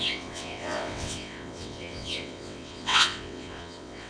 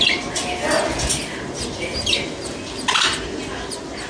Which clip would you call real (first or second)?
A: second